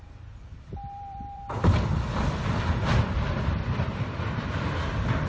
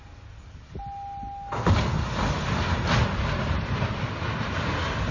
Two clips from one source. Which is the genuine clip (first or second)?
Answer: second